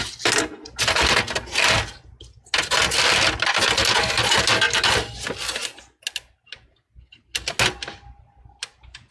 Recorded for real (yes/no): yes